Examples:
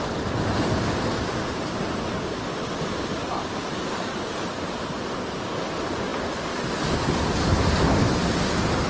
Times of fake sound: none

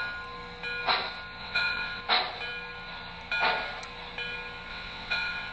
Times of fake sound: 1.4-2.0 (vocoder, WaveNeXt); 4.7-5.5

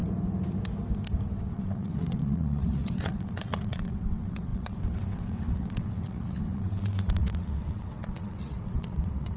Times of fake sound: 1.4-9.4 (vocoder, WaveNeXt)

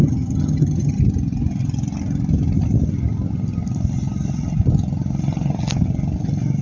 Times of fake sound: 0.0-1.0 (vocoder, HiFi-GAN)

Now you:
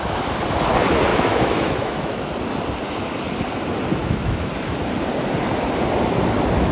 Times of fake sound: 1.1-2.2 (autoencoder, DAC-VAE); 4.0-4.5